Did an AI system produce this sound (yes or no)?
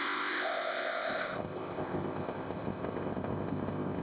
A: yes